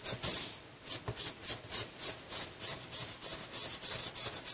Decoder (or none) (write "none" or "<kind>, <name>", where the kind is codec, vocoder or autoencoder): none